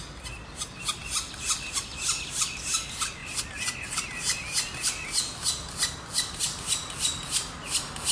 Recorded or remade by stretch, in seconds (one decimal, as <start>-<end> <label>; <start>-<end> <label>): 0.0-8.1 recorded